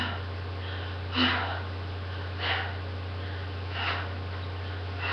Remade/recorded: recorded